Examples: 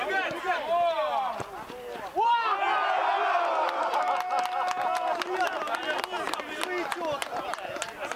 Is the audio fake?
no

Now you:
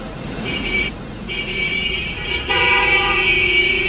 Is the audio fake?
yes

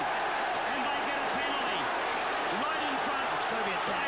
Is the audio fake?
no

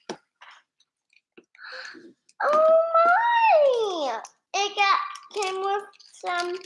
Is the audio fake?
no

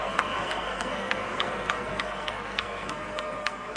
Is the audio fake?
yes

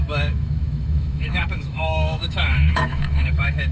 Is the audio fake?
yes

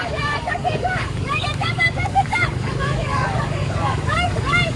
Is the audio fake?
yes